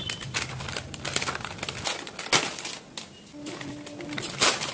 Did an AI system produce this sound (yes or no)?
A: no